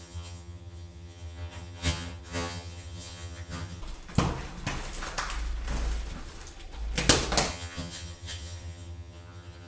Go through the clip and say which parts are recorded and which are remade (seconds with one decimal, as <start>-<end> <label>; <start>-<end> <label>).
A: 0.0-3.8 remade; 3.8-7.5 recorded; 7.5-9.7 remade

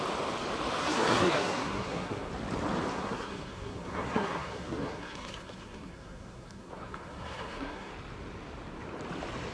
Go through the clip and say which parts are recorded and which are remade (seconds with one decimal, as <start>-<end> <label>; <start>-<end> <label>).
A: 0.0-0.8 recorded; 0.8-2.3 remade; 2.3-2.9 recorded; 2.9-7.9 remade; 7.9-9.5 recorded

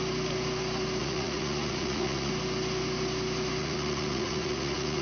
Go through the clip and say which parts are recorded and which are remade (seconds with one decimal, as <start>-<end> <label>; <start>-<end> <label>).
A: 0.0-1.0 recorded; 1.0-2.3 remade; 2.3-3.6 recorded; 3.6-5.0 remade

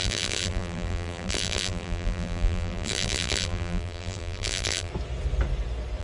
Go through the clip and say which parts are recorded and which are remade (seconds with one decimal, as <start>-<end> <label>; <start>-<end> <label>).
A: 0.0-4.9 remade; 4.9-6.0 recorded

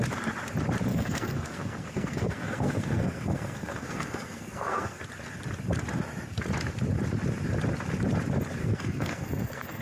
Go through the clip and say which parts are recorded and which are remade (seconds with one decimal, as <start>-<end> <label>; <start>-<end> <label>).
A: 0.0-0.9 recorded; 0.9-5.0 remade; 5.0-8.6 recorded; 8.6-9.8 remade

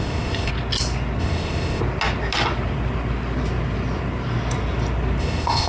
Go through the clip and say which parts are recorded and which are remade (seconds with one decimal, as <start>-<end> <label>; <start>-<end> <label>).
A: 0.0-0.5 remade; 0.5-1.2 recorded; 1.2-1.8 remade; 1.8-5.2 recorded; 5.2-5.7 remade

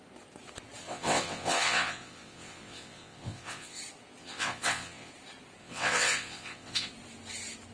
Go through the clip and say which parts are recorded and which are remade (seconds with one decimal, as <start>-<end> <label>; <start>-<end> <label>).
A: 0.0-0.8 recorded; 0.8-3.8 remade; 3.8-4.2 recorded; 4.2-5.1 remade; 5.1-5.6 recorded; 5.6-6.9 remade; 6.9-7.7 recorded

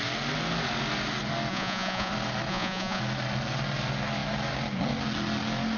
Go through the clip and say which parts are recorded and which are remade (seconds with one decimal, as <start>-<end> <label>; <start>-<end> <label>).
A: 0.0-1.5 recorded; 1.5-2.1 remade; 2.1-2.5 recorded; 2.5-3.0 remade; 3.0-5.8 recorded